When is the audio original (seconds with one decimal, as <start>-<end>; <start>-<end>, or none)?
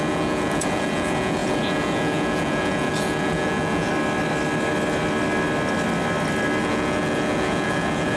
3.9-6.6